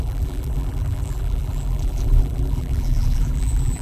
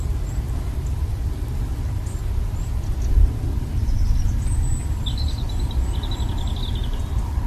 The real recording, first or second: second